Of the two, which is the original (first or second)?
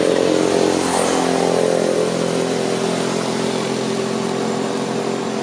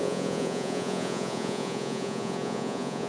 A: first